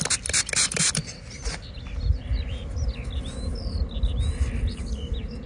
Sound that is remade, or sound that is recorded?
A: recorded